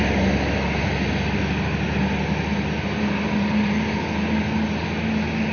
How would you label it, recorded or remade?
recorded